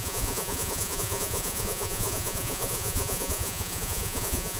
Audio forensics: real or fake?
fake